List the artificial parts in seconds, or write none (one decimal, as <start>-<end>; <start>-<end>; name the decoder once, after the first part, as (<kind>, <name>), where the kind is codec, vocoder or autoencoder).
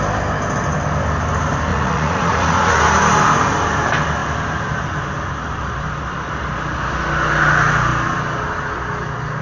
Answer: 1.7-2.7 (vocoder, Vocos)